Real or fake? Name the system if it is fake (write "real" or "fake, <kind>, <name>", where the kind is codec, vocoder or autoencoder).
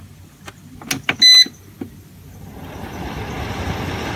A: real